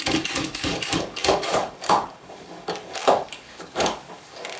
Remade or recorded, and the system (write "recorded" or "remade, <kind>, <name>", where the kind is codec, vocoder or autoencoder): remade, codec, DAC